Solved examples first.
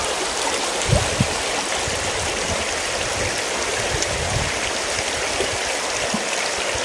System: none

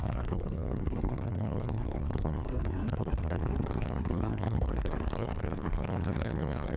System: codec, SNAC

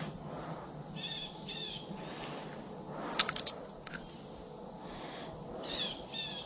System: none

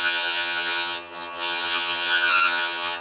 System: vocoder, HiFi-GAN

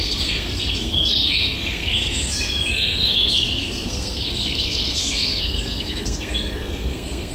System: codec, SNAC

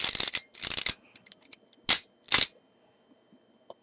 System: none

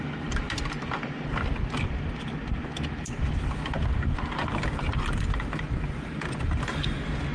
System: none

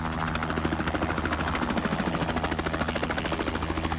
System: none